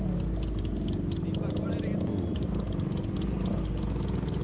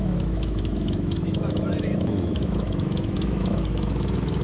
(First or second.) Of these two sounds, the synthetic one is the second